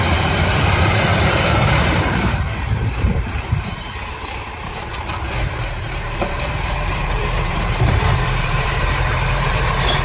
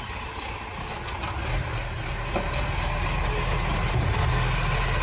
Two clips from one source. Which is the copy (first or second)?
first